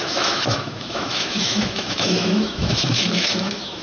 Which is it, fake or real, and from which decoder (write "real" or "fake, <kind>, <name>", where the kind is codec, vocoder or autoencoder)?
fake, autoencoder, DAC-VAE